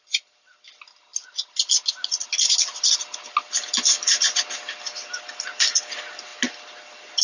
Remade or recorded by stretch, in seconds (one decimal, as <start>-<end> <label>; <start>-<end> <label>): 0.0-7.2 recorded